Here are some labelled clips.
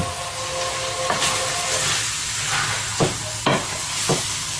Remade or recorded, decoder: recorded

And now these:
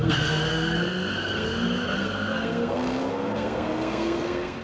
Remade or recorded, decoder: remade, codec, SNAC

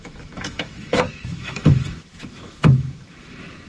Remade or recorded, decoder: remade, autoencoder, DAC-VAE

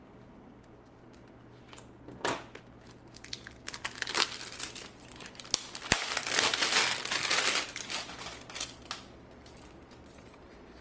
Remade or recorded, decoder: recorded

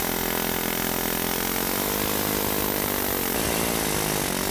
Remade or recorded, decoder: recorded